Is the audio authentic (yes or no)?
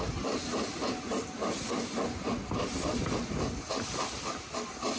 yes